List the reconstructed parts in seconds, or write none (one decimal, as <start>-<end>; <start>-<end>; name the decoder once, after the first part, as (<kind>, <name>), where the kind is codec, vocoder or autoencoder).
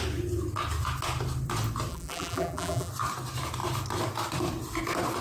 1.9-2.9 (vocoder, BigVGAN v2)